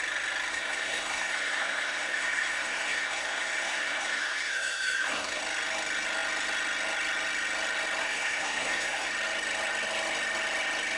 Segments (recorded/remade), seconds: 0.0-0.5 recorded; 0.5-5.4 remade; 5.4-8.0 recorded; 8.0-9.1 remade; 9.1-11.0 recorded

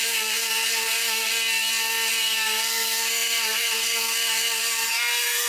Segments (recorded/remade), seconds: 0.0-1.3 remade; 1.3-2.2 recorded; 2.2-5.5 remade